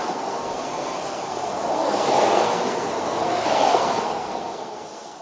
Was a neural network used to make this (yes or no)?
yes